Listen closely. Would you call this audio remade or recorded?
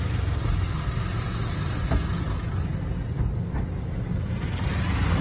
recorded